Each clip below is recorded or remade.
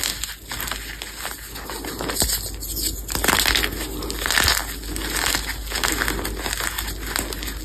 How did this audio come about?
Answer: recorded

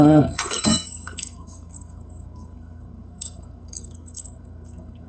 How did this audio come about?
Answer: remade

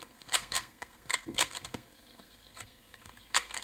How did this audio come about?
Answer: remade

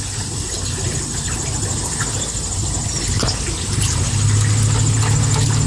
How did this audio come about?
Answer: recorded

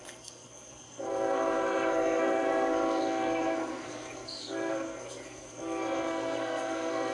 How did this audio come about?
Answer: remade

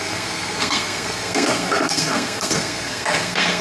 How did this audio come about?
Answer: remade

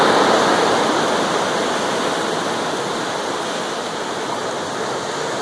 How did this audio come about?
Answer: recorded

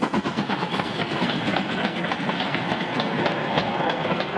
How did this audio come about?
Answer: remade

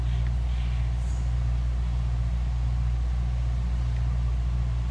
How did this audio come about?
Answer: recorded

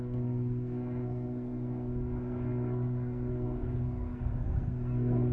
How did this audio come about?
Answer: remade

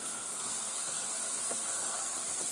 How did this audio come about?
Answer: remade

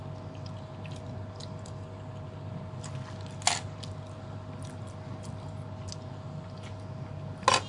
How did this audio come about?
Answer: recorded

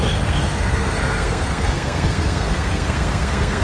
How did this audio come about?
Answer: remade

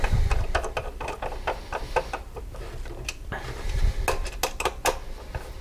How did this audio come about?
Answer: recorded